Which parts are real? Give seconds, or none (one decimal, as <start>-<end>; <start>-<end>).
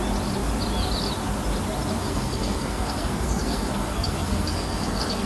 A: 0.0-2.0